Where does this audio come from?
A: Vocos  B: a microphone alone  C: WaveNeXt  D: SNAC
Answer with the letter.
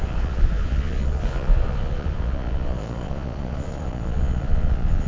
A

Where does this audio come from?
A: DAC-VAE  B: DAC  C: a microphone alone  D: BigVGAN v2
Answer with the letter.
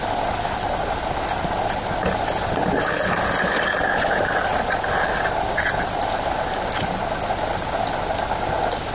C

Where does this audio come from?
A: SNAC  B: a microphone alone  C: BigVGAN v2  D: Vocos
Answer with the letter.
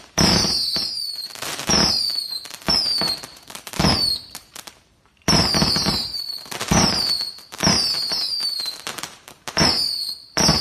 C